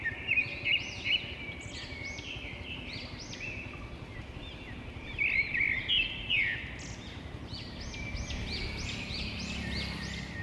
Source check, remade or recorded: recorded